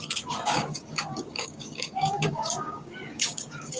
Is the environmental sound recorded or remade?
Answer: remade